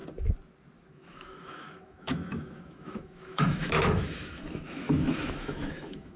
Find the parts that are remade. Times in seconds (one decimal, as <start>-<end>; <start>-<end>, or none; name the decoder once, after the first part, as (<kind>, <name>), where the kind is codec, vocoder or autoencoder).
0.9-6.2 (autoencoder, DAC-VAE)